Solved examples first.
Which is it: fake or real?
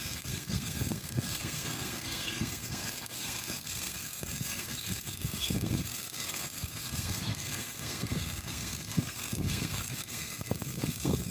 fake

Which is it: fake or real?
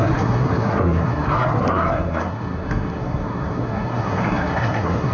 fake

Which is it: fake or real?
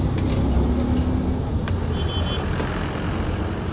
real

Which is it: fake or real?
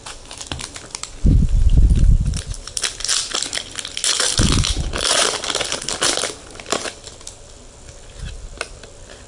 real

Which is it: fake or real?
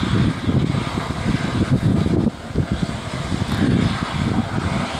real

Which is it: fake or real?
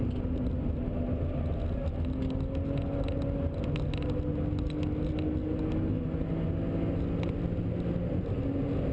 real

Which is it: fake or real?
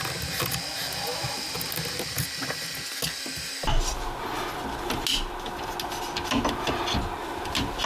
real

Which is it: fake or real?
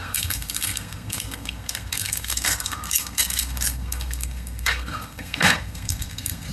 fake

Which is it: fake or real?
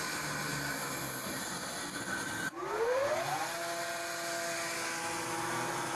real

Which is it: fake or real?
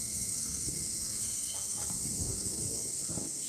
fake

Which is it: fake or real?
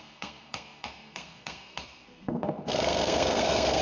fake